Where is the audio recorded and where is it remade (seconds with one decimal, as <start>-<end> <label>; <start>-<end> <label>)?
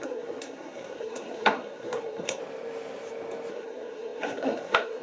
0.0-2.4 remade; 2.4-3.5 recorded; 3.5-5.0 remade